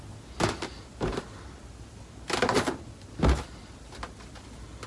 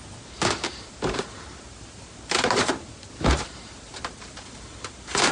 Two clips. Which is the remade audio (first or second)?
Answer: second